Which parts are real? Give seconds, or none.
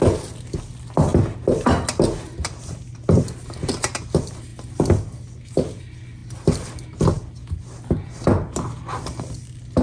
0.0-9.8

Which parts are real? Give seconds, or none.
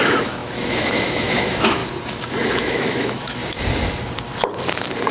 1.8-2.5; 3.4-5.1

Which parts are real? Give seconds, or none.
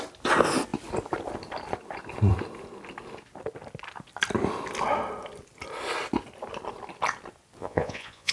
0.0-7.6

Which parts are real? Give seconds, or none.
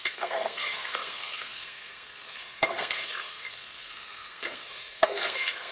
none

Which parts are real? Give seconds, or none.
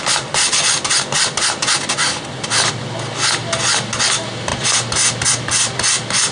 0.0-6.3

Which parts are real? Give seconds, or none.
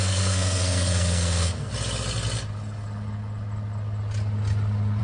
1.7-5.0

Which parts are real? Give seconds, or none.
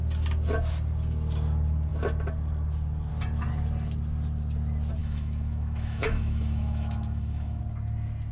0.0-5.0; 7.6-8.3